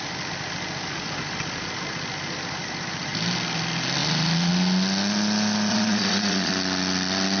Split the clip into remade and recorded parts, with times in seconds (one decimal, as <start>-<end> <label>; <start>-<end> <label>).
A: 0.0-5.7 recorded; 5.7-6.5 remade; 6.5-7.4 recorded